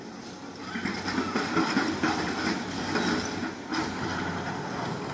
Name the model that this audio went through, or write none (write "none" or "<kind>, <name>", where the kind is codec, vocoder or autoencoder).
none